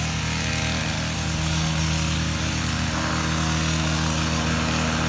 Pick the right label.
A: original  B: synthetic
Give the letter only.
A